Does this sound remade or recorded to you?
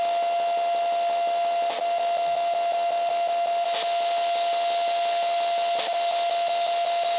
recorded